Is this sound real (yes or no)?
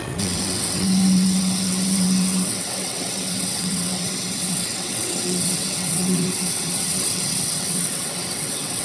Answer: no